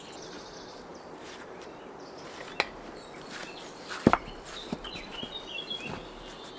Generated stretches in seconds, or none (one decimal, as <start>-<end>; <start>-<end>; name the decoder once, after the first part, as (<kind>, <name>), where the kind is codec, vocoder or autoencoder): 0.9-2.0 (vocoder, BigVGAN v2); 3.4-5.5